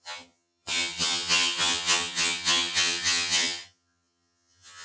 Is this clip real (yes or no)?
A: no